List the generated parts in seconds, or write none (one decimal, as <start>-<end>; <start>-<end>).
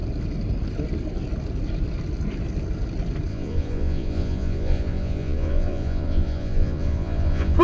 3.3-7.6